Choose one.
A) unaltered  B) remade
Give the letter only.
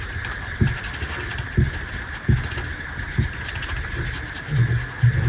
A